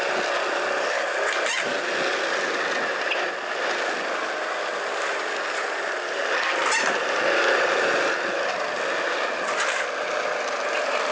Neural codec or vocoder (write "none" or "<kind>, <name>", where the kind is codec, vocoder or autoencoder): none